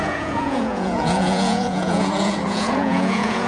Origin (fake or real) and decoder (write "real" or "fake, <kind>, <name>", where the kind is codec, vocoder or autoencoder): fake, vocoder, Vocos